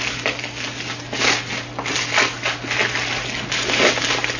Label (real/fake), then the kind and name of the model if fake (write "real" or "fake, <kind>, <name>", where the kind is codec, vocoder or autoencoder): real